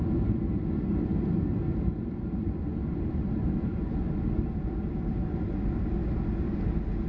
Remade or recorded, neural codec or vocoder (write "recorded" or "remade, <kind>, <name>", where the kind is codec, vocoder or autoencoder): recorded